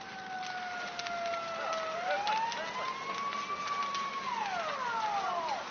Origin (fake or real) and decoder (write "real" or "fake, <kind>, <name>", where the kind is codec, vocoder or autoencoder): real